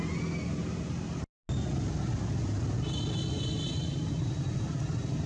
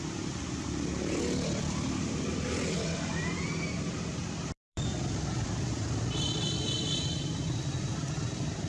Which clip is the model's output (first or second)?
second